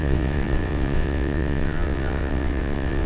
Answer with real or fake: fake